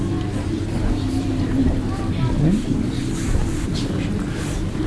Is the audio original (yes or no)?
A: yes